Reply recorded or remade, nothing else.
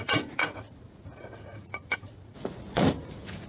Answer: remade